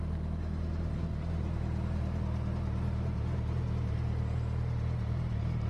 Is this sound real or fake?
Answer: real